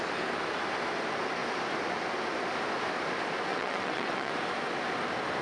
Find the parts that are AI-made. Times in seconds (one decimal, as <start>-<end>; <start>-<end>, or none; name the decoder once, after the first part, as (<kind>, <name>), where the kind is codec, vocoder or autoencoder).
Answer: 3.5-4.3 (vocoder, WaveNeXt)